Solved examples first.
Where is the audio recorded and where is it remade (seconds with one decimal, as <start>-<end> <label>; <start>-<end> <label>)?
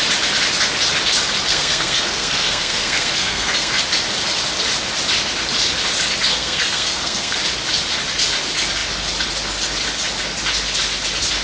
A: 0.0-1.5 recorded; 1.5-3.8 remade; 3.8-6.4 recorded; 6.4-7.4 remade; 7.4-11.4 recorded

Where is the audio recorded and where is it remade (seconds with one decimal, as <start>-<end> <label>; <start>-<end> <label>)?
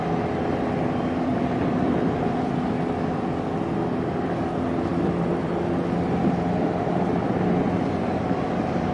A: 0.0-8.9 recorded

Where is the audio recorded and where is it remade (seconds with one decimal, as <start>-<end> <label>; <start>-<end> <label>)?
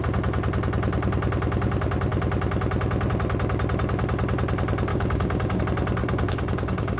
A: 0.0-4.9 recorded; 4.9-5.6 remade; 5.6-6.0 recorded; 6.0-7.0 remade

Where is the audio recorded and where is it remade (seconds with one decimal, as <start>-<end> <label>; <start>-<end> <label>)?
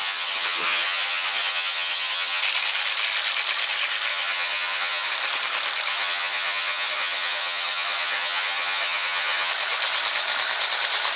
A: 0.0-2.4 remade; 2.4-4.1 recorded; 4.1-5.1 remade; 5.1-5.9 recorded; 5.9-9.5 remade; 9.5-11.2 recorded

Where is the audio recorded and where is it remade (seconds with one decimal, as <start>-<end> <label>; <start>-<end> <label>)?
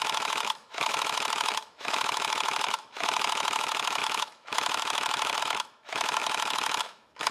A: 0.0-7.3 remade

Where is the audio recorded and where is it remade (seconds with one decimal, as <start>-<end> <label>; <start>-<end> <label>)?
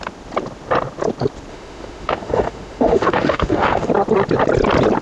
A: 0.0-1.5 recorded; 1.5-3.9 remade; 3.9-5.0 recorded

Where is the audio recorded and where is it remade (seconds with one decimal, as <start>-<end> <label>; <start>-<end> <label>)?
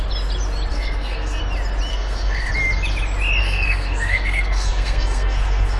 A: 0.0-0.7 recorded; 0.7-1.4 remade; 1.4-1.9 recorded; 1.9-2.5 remade; 2.5-3.4 recorded; 3.4-5.8 remade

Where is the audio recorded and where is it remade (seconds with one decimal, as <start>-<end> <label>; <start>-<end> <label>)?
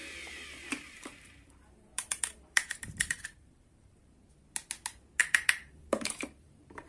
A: 0.0-4.1 remade; 4.1-5.2 recorded; 5.2-6.9 remade